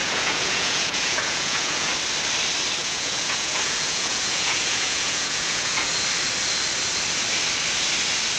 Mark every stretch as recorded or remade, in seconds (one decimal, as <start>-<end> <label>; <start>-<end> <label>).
0.0-1.9 remade; 1.9-2.8 recorded; 2.8-5.9 remade; 5.9-8.4 recorded